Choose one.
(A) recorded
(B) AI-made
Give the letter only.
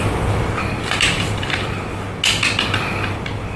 A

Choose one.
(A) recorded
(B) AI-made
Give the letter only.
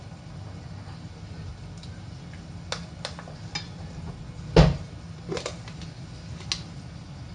A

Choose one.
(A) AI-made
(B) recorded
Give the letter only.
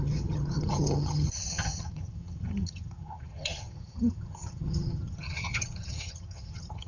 A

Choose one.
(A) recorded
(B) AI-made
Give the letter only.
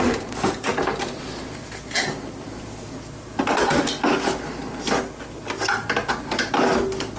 A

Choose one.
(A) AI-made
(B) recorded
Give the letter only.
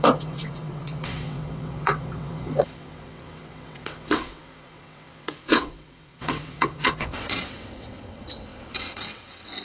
A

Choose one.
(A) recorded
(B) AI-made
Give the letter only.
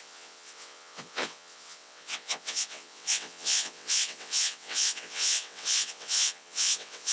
B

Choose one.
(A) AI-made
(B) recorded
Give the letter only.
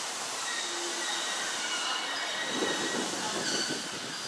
B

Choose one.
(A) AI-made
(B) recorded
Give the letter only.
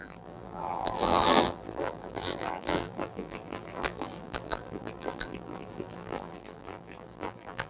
A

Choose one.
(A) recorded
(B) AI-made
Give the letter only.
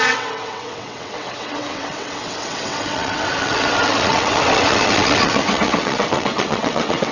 B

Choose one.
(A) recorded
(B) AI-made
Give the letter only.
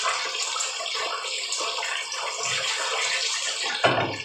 A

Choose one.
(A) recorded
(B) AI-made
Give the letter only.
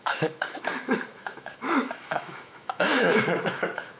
B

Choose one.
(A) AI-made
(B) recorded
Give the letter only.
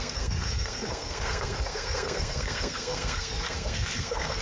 A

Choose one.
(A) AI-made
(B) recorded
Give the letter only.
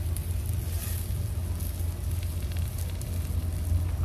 B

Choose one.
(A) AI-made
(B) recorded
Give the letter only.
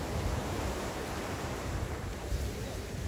A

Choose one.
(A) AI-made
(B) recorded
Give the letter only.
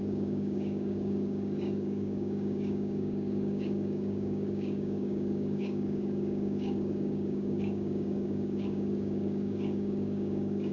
A